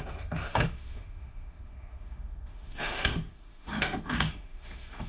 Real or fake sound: fake